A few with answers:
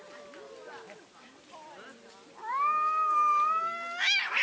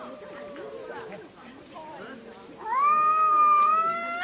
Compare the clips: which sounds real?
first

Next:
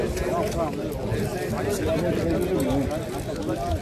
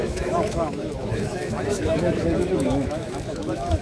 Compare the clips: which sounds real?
first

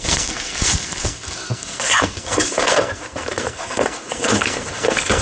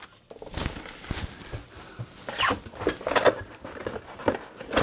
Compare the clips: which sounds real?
second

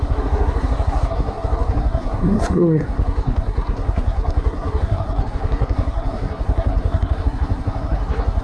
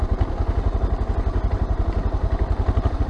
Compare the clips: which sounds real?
second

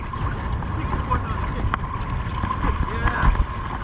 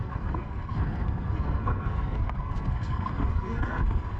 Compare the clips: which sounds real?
first